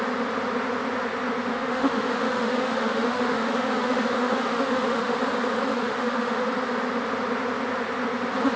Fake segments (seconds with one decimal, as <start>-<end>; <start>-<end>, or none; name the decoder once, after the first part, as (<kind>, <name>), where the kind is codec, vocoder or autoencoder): 1.5-5.2 (autoencoder, DAC-VAE); 5.7-6.5